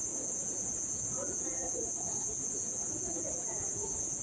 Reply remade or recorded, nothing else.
remade